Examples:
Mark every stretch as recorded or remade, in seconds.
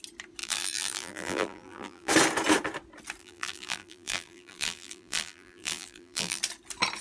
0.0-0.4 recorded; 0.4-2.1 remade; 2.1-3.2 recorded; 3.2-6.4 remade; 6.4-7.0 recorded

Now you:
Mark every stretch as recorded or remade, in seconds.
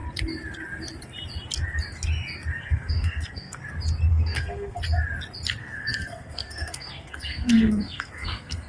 0.0-2.6 recorded; 2.6-3.6 remade; 3.6-4.1 recorded; 4.1-4.8 remade; 4.8-5.6 recorded; 5.6-8.7 remade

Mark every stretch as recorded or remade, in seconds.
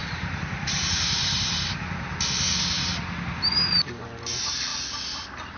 0.0-1.6 remade; 1.6-5.6 recorded